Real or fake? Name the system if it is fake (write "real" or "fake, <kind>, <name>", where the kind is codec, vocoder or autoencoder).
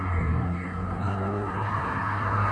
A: fake, codec, SNAC